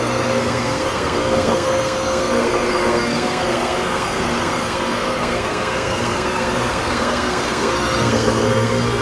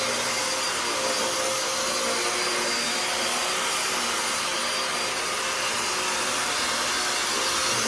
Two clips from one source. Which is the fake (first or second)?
first